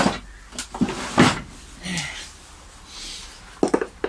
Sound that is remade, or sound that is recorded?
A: recorded